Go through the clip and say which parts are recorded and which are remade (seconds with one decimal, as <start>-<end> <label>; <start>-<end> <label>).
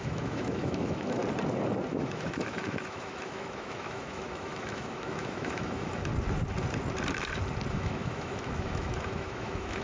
0.0-1.2 remade; 1.2-1.9 recorded; 1.9-6.1 remade; 6.1-7.7 recorded; 7.7-9.8 remade